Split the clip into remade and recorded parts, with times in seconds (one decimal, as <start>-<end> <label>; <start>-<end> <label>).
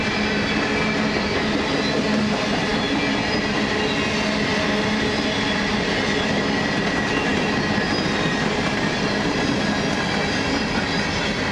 0.0-11.5 recorded